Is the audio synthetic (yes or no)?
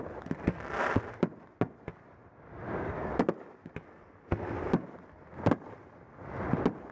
no